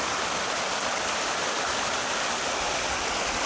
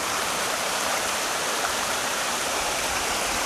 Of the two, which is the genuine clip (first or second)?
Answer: first